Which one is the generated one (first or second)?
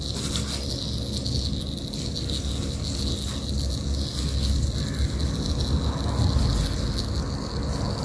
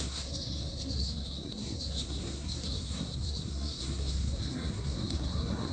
second